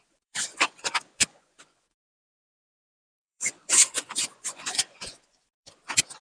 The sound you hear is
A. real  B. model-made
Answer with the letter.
B